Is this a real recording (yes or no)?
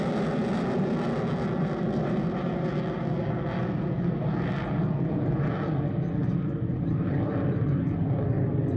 yes